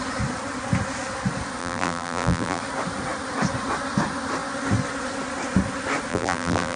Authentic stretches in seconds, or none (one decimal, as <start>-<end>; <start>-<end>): 0.0-1.6; 2.6-6.1